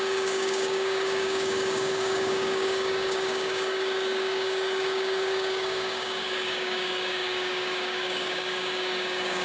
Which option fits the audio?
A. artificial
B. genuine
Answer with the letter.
A